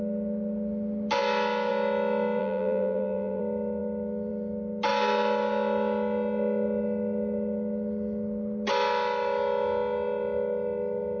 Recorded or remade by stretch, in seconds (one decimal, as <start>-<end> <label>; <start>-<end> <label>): 0.0-2.4 recorded; 2.4-3.4 remade; 3.4-11.2 recorded